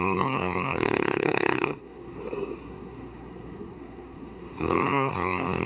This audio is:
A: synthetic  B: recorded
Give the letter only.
A